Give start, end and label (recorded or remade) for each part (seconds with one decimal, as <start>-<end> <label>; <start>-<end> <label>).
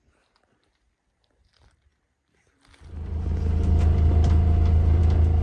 0.0-5.4 recorded